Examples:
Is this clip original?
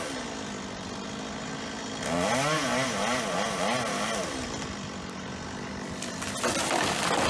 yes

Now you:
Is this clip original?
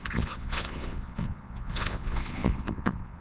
no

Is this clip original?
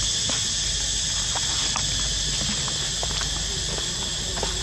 yes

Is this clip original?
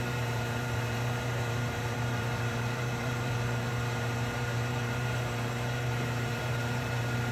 no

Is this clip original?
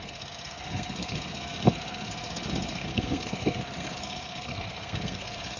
no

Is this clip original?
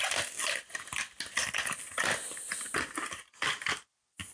yes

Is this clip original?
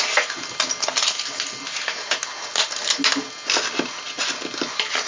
yes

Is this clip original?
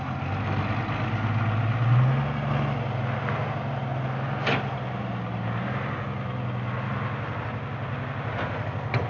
yes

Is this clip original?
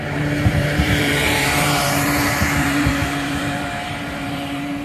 no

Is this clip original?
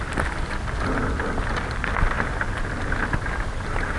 yes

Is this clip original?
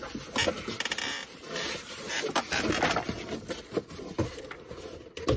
yes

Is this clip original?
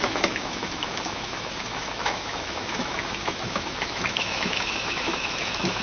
no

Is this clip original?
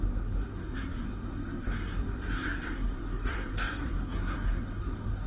no